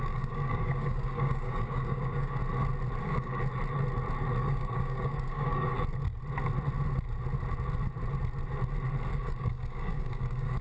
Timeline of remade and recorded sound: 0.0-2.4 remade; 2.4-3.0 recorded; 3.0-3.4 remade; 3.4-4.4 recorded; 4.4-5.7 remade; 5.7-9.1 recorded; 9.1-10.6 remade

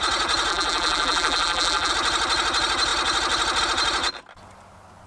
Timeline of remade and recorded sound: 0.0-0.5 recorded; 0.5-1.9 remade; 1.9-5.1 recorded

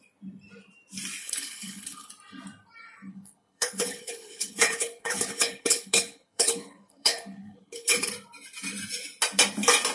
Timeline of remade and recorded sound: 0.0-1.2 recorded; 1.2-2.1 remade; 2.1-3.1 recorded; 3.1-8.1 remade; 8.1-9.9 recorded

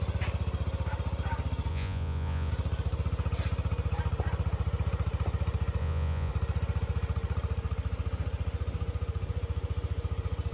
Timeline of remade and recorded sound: 0.0-1.7 recorded; 1.7-2.5 remade; 2.5-5.8 recorded; 5.8-6.3 remade; 6.3-10.5 recorded